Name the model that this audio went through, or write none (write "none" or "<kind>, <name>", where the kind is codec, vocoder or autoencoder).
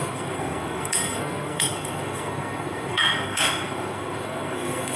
codec, SNAC